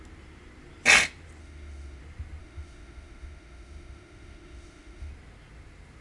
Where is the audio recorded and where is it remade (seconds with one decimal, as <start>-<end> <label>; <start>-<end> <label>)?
0.0-1.4 recorded; 1.4-2.0 remade; 2.0-2.4 recorded; 2.4-5.1 remade; 5.1-6.0 recorded